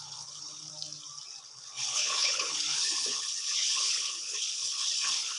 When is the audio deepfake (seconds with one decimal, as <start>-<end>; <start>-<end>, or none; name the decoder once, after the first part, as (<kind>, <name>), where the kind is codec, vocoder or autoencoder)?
0.0-0.7 (codec, HILCodec); 1.4-5.4